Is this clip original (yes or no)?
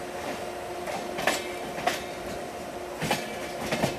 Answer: yes